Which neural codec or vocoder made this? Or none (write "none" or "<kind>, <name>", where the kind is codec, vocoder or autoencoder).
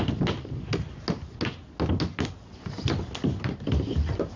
none